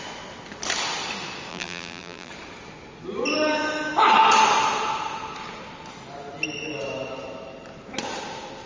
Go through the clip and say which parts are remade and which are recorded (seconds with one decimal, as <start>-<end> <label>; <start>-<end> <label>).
0.0-1.5 recorded; 1.5-2.3 remade; 2.3-8.7 recorded